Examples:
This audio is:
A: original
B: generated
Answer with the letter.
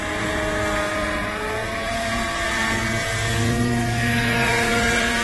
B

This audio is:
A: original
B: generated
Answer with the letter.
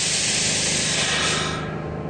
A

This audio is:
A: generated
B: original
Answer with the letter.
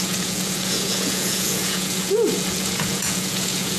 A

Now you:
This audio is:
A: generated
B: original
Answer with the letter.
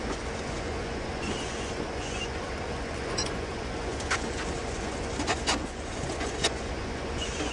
A